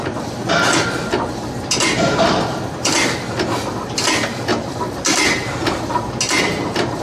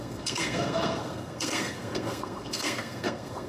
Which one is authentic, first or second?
first